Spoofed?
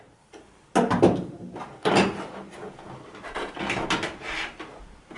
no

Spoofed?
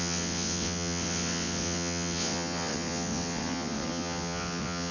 yes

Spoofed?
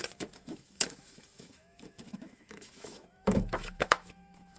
yes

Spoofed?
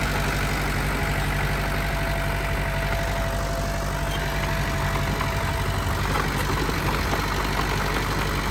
no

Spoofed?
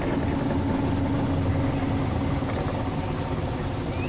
no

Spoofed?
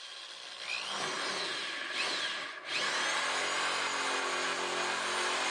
no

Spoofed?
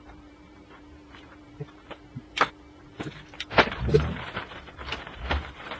yes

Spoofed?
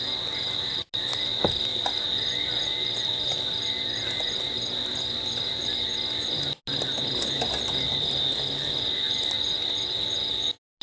no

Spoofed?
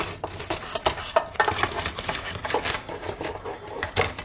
no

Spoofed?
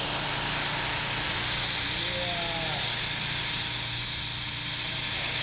no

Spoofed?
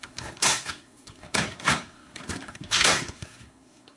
yes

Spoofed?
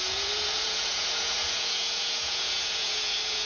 yes